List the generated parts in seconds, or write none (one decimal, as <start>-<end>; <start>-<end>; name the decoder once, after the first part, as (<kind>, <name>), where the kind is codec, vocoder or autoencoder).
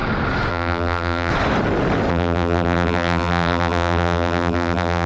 0.5-1.3 (vocoder, BigVGAN v2); 2.1-5.1